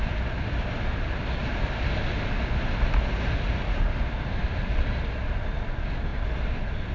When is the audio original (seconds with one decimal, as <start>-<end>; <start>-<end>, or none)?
0.0-6.9